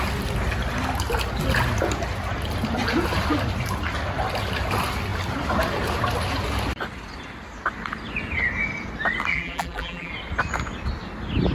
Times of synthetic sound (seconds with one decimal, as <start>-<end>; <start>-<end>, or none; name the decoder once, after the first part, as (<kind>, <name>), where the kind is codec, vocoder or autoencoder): 9.3-10.1 (vocoder, BigVGAN v2)